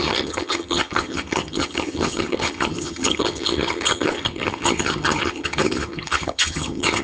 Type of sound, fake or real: fake